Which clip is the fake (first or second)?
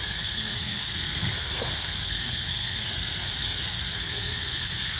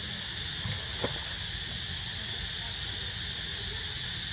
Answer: first